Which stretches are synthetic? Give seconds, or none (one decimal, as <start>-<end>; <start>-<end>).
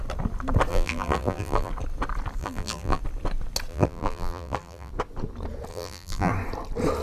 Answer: 0.7-1.7; 2.4-3.0; 3.7-4.9; 5.7-6.3